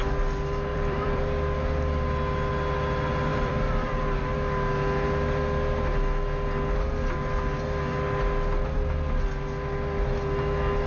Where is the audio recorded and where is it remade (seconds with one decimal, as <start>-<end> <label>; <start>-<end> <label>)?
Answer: 0.0-0.7 recorded; 0.7-1.2 remade; 1.2-3.3 recorded; 3.3-4.0 remade; 4.0-10.9 recorded

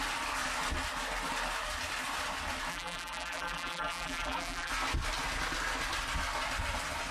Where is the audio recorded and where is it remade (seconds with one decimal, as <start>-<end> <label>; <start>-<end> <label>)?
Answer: 0.0-2.7 recorded; 2.7-4.7 remade; 4.7-7.1 recorded

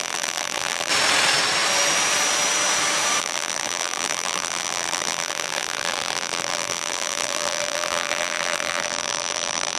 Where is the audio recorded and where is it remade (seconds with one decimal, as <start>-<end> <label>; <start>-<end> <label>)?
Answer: 0.0-0.9 remade; 0.9-3.2 recorded; 3.2-9.8 remade

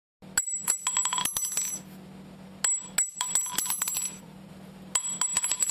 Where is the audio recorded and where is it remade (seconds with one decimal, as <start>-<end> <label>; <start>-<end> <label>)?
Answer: 0.0-4.0 recorded; 4.0-4.5 remade; 4.5-5.7 recorded